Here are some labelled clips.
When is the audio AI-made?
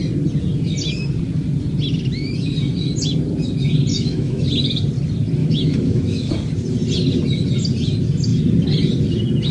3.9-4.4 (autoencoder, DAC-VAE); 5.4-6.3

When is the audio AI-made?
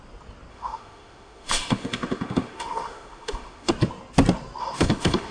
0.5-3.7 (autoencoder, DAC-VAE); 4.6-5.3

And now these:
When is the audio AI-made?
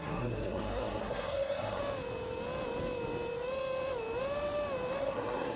0.0-1.8 (codec, SNAC); 5.0-5.6